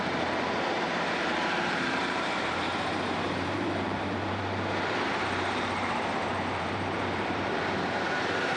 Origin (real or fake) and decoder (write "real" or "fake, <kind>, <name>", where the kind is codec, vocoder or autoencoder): fake, vocoder, BigVGAN v2